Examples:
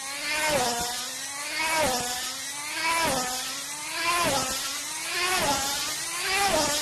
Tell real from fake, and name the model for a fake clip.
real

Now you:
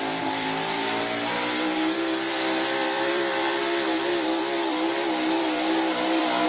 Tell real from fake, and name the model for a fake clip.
fake, vocoder, BigVGAN v2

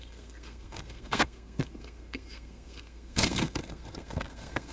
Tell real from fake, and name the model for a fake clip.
fake, codec, SNAC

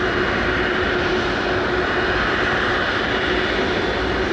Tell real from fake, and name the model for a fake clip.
real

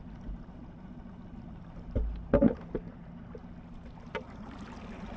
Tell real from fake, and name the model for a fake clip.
real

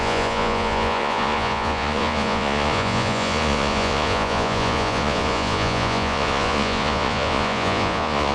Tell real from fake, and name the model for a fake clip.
fake, vocoder, Vocos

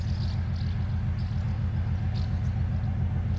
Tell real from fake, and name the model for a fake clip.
real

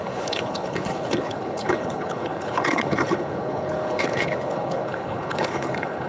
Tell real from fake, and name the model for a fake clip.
fake, codec, HILCodec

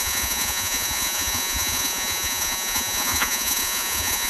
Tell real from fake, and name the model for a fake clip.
fake, vocoder, Vocos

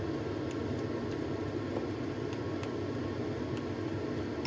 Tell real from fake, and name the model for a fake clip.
real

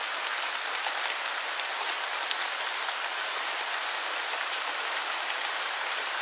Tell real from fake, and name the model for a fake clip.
real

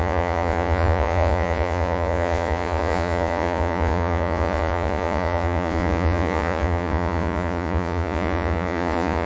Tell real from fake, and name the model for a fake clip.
fake, vocoder, Vocos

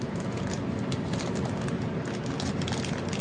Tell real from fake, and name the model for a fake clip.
real